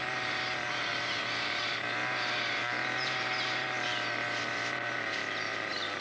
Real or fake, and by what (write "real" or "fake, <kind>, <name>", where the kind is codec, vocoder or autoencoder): fake, vocoder, BigVGAN v2